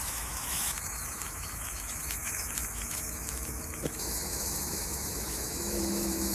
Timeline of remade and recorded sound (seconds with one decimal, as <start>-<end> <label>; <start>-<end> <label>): 0.0-6.3 remade